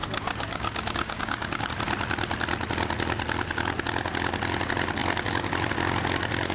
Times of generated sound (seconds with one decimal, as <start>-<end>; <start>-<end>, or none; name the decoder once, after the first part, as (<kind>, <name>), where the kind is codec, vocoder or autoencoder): 0.0-1.7 (codec, DAC)